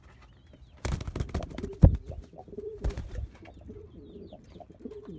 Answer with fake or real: real